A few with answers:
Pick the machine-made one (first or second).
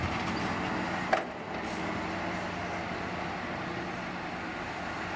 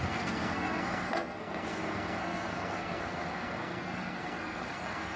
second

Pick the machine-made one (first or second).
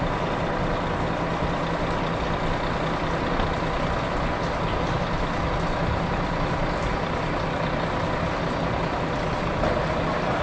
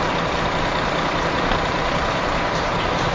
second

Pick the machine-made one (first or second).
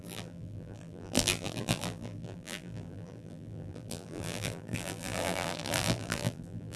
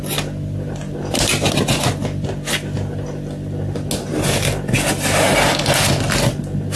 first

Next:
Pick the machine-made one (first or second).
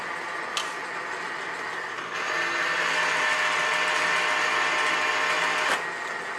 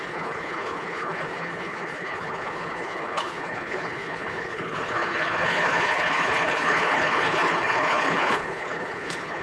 second